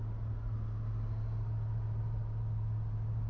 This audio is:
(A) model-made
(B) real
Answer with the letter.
B